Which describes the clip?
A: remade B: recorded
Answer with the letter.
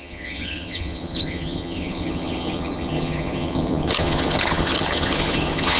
A